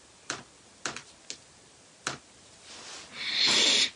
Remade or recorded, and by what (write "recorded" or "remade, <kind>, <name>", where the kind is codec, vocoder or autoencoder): recorded